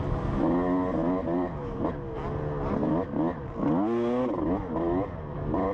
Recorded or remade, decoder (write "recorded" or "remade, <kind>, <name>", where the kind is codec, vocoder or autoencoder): recorded